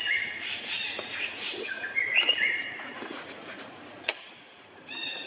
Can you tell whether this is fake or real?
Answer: fake